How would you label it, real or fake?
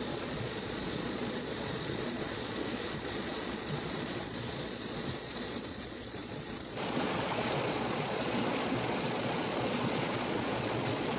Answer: fake